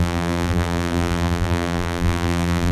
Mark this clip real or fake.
fake